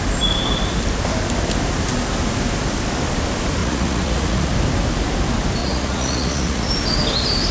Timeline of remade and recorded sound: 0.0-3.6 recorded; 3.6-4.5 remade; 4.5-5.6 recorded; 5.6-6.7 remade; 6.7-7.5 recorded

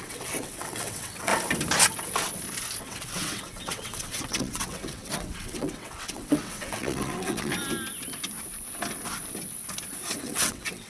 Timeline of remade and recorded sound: 0.0-1.3 remade; 1.3-2.8 recorded; 2.8-7.5 remade; 7.5-10.2 recorded; 10.2-10.9 remade

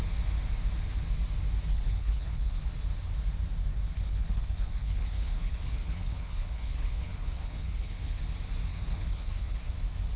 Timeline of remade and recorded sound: 0.0-1.7 recorded; 1.7-2.6 remade; 2.6-3.7 recorded; 3.7-8.2 remade; 8.2-8.7 recorded; 8.7-9.7 remade; 9.7-10.2 recorded

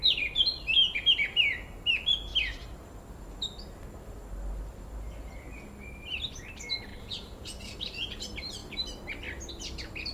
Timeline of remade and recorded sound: 0.0-6.9 recorded; 6.9-8.2 remade; 8.2-10.1 recorded

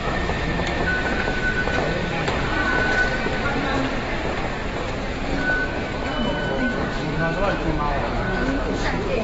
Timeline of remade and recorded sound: 0.0-2.0 remade; 2.0-6.6 recorded; 6.6-9.2 remade